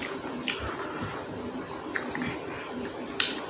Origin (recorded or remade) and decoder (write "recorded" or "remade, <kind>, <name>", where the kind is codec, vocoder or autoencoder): recorded